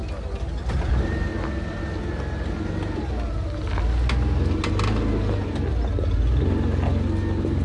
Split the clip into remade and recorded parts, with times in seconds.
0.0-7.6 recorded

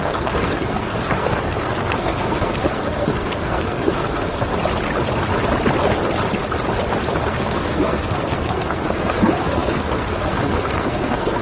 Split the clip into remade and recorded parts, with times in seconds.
0.0-4.5 remade; 4.5-7.2 recorded; 7.2-11.4 remade

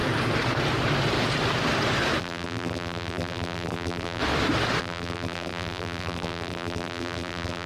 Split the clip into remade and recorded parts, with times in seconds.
0.0-2.2 recorded; 2.2-4.2 remade; 4.2-4.8 recorded; 4.8-7.7 remade

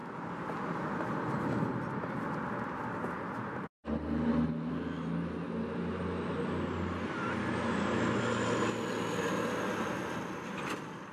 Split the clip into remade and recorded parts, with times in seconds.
0.0-11.1 recorded

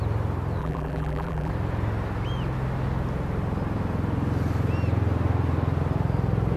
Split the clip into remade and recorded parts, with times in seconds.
0.0-0.6 recorded; 0.6-1.5 remade; 1.5-6.6 recorded

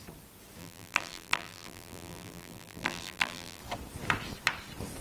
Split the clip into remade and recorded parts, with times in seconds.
0.0-0.6 recorded; 0.6-3.6 remade; 3.6-5.0 recorded

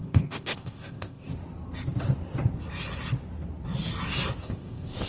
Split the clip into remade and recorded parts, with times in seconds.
0.0-1.3 remade; 1.3-4.4 recorded; 4.4-5.1 remade